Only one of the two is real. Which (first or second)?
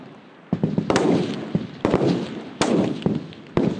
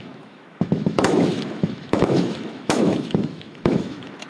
first